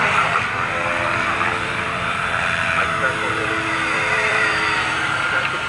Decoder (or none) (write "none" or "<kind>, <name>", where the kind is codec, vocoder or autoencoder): vocoder, BigVGAN v2